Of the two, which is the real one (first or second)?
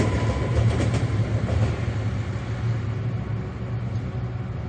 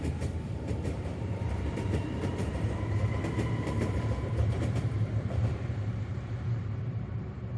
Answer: first